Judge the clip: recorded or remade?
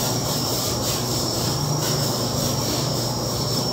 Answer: remade